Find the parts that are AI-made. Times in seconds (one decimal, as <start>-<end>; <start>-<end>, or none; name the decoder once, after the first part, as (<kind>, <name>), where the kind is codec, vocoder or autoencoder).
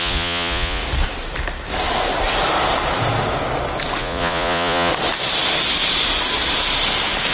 0.0-0.8 (vocoder, Vocos); 4.0-4.9